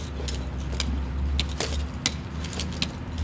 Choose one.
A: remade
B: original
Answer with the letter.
B